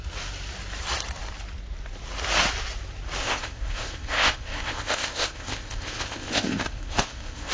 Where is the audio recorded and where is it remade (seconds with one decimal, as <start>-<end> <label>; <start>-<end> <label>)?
0.0-3.2 recorded; 3.2-7.5 remade